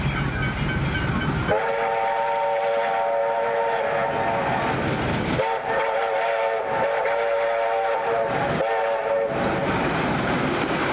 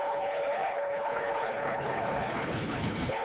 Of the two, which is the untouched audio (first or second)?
first